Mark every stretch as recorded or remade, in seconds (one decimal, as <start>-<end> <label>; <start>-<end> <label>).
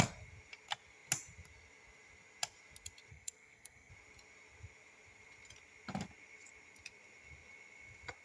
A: 0.0-3.1 recorded; 3.1-3.9 remade; 3.9-8.2 recorded